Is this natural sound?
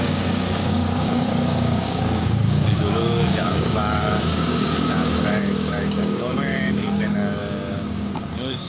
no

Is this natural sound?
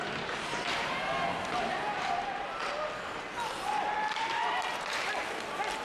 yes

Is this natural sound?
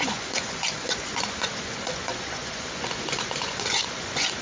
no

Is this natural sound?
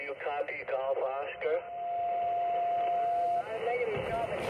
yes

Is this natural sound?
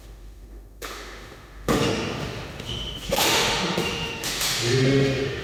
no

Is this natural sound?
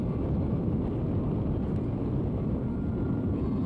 yes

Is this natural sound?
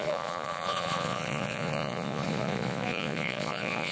no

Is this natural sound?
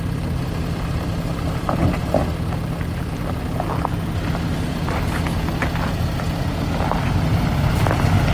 yes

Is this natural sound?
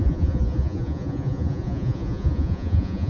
no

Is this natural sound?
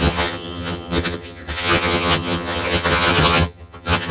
no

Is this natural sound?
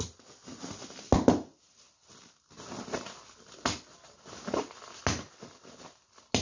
yes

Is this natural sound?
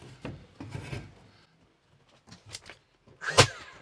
yes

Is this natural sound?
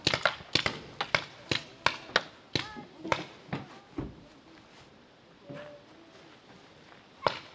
yes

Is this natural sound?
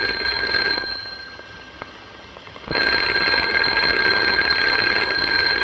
no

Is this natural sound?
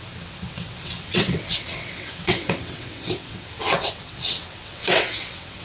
no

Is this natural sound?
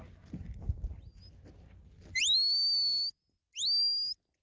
yes